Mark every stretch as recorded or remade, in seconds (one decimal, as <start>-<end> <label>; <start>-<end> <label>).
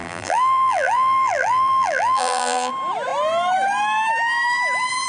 0.0-2.7 remade; 2.7-5.1 recorded